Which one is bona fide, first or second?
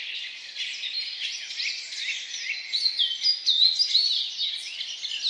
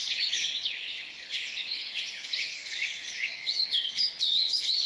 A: first